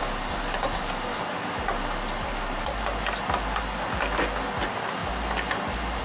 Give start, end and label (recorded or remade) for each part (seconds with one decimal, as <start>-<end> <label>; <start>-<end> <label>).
0.0-6.0 recorded